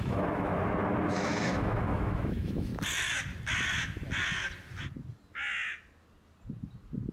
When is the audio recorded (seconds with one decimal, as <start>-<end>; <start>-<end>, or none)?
0.5-1.1; 2.7-7.1